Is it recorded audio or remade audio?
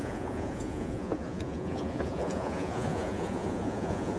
remade